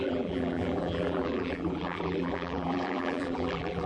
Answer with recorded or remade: remade